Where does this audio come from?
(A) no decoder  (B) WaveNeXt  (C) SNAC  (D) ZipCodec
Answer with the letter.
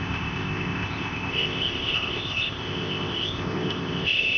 D